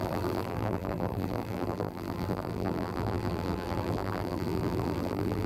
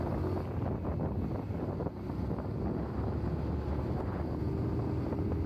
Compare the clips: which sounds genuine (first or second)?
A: second